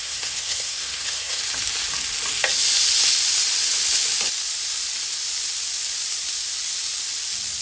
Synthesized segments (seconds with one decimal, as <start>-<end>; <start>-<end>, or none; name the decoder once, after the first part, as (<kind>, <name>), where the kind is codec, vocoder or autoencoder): 0.0-1.4 (codec, SNAC)